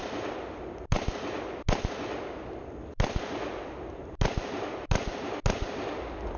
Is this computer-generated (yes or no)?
no